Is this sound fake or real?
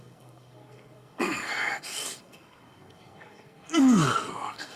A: fake